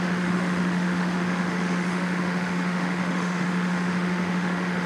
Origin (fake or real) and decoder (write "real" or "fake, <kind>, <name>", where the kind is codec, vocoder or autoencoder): fake, autoencoder, DAC-VAE